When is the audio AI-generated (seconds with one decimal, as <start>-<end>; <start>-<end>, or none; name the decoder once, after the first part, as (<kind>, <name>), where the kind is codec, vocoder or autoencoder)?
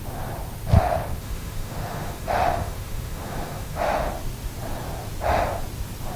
0.8-4.1 (autoencoder, DAC-VAE)